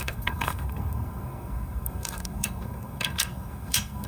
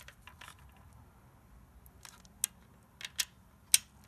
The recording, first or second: second